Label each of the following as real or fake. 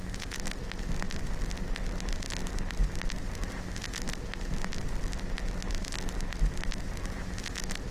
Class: real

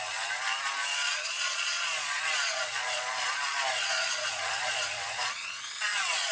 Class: fake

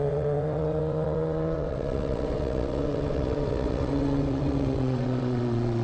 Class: fake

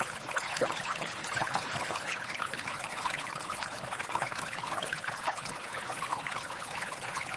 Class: fake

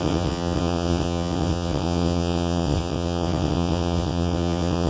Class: fake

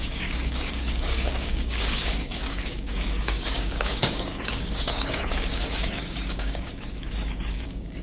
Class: fake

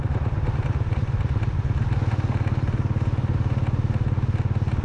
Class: real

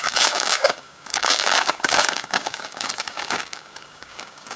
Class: fake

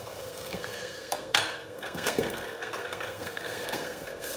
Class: fake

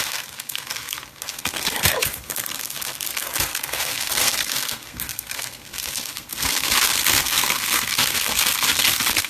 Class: fake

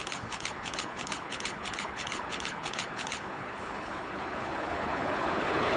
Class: fake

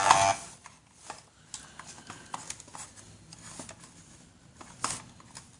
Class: real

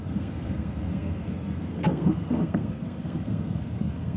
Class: fake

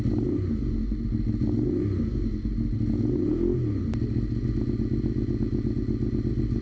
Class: real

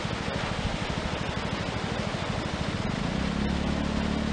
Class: real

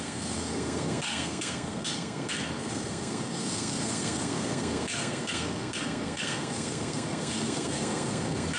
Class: fake